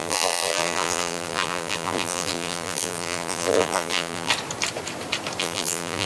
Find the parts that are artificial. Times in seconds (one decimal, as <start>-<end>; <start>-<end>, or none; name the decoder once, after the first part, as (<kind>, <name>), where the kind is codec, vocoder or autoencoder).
0.0-4.3 (vocoder, BigVGAN v2); 5.4-6.1